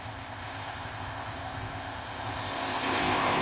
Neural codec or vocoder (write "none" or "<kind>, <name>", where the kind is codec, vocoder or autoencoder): codec, ZipCodec